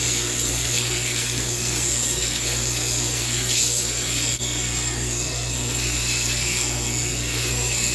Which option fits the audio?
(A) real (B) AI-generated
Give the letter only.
B